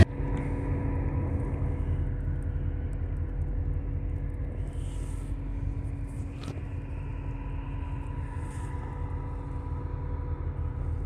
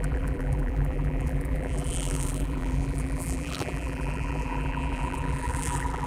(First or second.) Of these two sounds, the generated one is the second